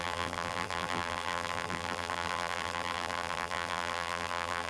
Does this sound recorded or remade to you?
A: remade